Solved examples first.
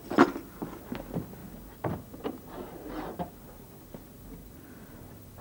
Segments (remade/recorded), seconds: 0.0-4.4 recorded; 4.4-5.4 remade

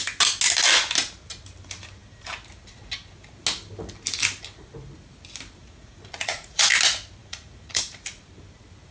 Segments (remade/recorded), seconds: 0.0-5.6 recorded; 5.6-6.7 remade; 6.7-7.2 recorded; 7.2-7.8 remade; 7.8-8.9 recorded

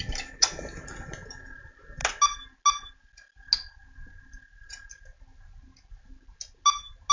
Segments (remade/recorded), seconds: 0.0-7.1 recorded

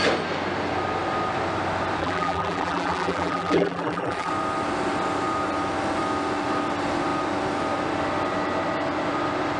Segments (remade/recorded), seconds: 0.0-2.0 recorded; 2.0-4.3 remade; 4.3-9.6 recorded

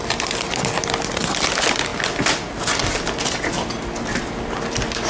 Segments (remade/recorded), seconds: 0.0-5.1 recorded

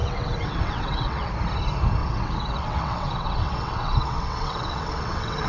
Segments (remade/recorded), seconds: 0.0-1.3 remade; 1.3-2.0 recorded; 2.0-5.5 remade